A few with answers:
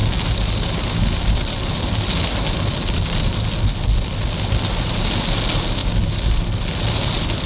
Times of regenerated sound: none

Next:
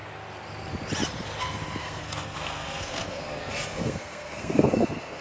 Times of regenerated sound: 1.8-5.2 (codec, SNAC)

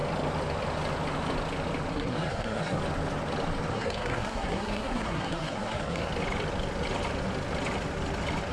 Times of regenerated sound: 1.9-2.8 (codec, SNAC); 3.7-6.1

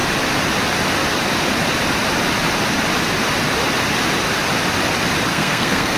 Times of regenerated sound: 5.3-6.0 (codec, SNAC)

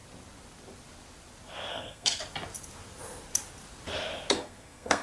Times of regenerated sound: 1.7-2.2 (codec, SNAC); 4.3-5.0

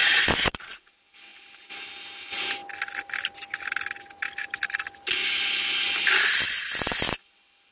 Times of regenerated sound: 0.0-0.9 (vocoder, WaveNeXt)